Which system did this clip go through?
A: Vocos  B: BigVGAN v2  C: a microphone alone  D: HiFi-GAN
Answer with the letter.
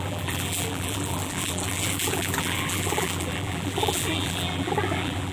B